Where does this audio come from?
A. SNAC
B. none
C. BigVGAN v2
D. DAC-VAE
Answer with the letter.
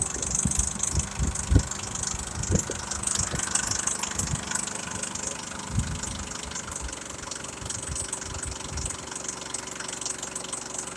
B